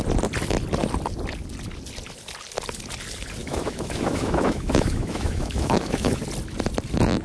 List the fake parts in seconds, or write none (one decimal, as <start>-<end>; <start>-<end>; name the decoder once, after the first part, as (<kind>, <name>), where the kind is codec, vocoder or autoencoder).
3.4-6.2 (autoencoder, DAC-VAE)